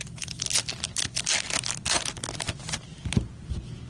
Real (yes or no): yes